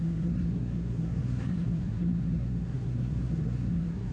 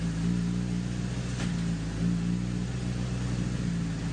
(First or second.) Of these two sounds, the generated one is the first